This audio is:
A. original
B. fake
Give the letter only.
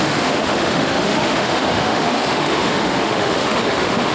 B